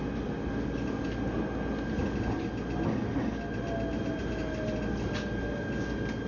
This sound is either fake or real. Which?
real